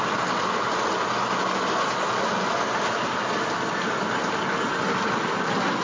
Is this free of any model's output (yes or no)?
yes